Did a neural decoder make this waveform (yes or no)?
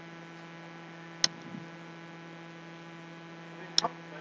no